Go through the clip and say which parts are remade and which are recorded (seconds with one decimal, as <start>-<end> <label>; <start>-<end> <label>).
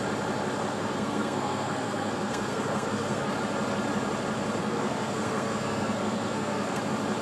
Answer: 0.0-0.7 recorded; 0.7-3.3 remade; 3.3-4.6 recorded; 4.6-6.8 remade; 6.8-7.2 recorded